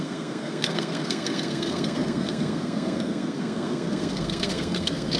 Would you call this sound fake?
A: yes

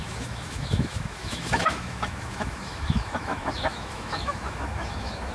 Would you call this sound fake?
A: yes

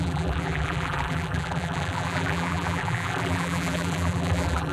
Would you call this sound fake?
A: yes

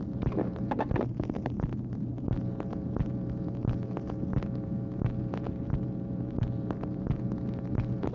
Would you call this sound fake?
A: no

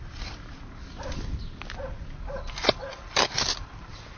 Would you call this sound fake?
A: no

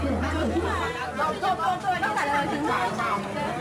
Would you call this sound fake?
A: no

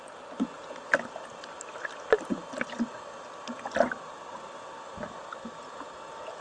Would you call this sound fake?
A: no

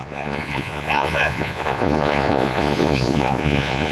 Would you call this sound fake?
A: yes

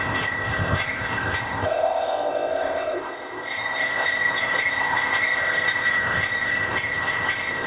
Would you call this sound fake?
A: yes